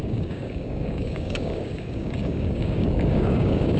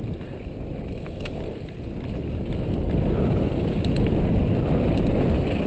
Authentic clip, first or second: second